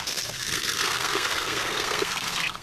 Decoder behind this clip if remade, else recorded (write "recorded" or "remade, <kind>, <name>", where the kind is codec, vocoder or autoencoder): remade, codec, SNAC